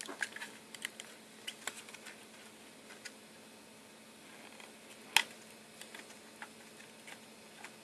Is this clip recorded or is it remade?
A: recorded